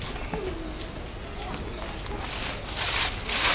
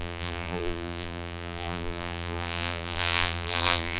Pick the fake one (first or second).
second